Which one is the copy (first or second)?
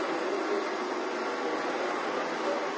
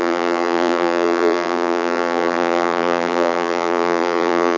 second